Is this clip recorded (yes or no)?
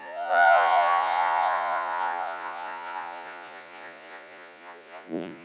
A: no